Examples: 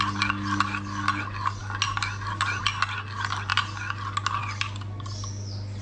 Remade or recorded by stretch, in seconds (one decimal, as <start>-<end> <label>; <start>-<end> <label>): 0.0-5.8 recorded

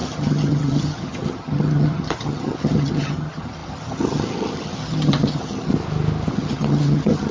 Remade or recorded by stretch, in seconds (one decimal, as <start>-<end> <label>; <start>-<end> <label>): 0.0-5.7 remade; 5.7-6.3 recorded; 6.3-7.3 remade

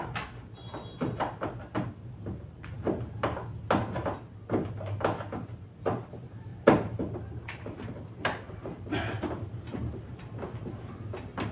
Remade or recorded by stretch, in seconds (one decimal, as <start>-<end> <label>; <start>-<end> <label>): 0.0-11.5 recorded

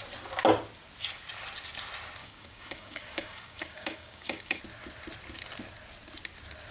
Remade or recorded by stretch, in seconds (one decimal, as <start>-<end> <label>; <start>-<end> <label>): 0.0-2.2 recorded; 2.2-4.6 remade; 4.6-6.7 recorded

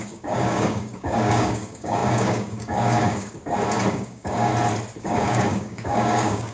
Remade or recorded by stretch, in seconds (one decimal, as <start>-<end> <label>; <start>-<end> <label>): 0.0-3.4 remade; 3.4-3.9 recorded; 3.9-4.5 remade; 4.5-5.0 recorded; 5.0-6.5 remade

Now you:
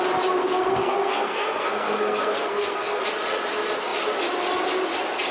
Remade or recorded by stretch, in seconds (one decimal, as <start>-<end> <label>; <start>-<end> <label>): 0.0-0.4 recorded; 0.4-3.0 remade; 3.0-5.3 recorded

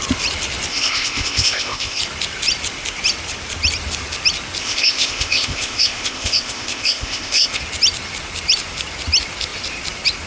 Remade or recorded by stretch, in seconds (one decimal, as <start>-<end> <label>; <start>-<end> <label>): 0.0-0.7 recorded; 0.7-2.0 remade; 2.0-4.6 recorded; 4.6-7.6 remade; 7.6-10.3 recorded

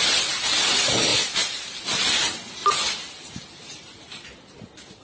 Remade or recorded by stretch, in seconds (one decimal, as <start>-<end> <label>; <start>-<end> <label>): 0.0-5.0 recorded